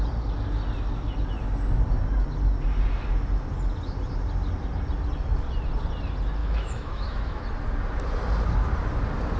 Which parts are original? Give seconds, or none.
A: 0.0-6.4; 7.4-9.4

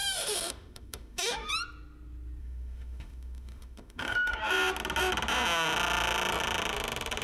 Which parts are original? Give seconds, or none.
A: 1.5-2.4; 4.4-7.2

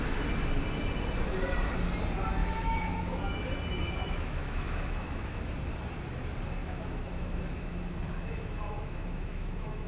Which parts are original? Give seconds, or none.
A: 0.0-2.4; 3.5-4.0; 5.4-6.6

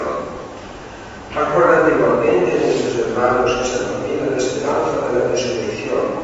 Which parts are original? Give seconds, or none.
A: 2.4-6.2

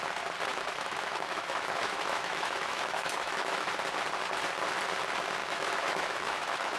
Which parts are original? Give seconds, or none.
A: 0.0-0.5; 3.7-5.4

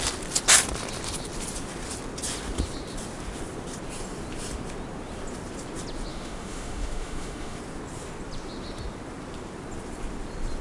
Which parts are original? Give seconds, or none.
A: 0.0-6.1; 7.6-10.6

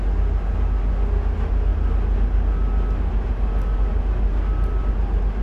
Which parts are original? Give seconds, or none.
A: 0.0-5.4

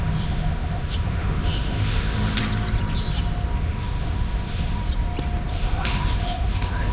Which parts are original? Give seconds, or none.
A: 2.4-3.6; 4.8-5.5